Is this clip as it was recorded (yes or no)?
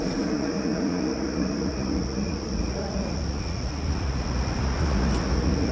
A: no